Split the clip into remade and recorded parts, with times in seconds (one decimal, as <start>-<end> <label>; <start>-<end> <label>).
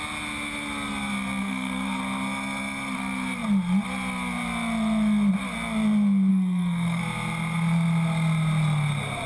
0.0-1.4 recorded; 1.4-2.0 remade; 2.0-6.3 recorded; 6.3-7.0 remade; 7.0-9.3 recorded